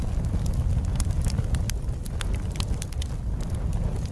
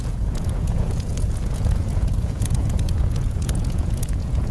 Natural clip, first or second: first